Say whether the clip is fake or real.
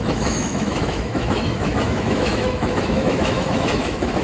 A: fake